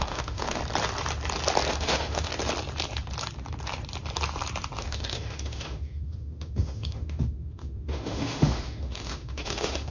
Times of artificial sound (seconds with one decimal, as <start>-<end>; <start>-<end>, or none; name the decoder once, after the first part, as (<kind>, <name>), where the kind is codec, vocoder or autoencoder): 0.0-0.6 (autoencoder, DAC-VAE); 1.7-2.3; 4.8-9.9

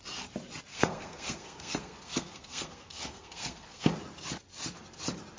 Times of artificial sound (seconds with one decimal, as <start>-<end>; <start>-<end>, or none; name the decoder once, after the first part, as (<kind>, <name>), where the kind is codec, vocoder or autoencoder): 0.7-3.9 (codec, SNAC)